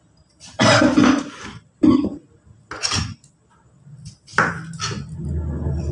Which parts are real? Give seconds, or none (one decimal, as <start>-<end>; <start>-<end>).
0.0-5.9